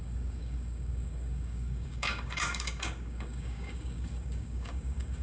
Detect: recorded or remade remade